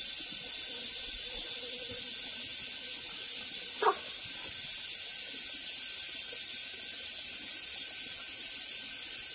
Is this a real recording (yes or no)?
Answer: yes